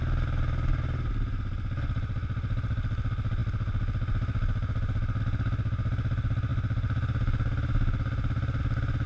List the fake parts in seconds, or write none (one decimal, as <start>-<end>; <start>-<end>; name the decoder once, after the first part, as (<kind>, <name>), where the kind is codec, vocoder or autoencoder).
none